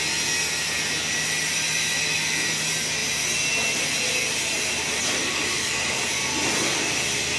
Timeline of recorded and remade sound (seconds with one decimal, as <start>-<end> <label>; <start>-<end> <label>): 0.0-5.3 recorded; 5.3-6.0 remade; 6.0-7.4 recorded